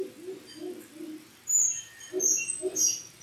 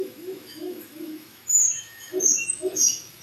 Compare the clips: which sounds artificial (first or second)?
second